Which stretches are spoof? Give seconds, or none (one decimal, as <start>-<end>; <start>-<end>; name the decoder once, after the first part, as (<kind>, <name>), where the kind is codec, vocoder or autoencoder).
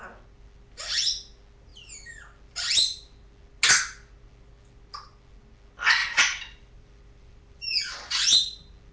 6.0-7.6 (vocoder, BigVGAN v2)